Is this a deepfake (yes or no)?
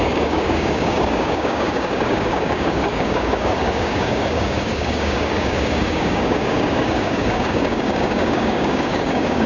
yes